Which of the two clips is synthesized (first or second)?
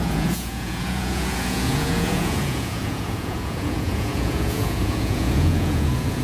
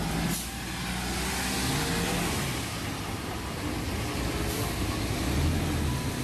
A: first